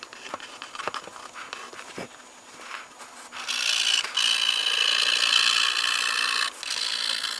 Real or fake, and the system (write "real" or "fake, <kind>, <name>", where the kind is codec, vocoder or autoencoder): real